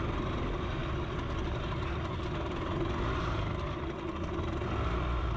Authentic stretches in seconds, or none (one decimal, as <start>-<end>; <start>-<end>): 0.0-5.4